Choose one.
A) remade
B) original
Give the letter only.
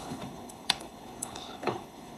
A